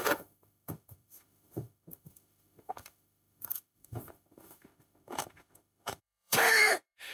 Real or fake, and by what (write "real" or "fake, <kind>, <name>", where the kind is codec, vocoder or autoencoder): fake, autoencoder, DAC-VAE